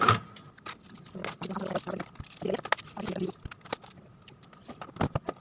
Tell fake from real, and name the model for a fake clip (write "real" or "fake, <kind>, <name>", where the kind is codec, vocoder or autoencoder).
real